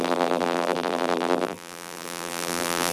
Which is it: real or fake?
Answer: fake